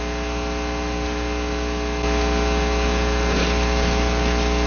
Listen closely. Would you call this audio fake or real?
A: real